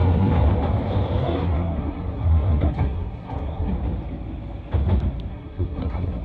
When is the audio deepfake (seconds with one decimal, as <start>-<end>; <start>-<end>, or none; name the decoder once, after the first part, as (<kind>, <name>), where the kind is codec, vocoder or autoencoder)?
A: 0.0-0.5 (codec, SNAC); 1.2-3.7; 5.3-6.2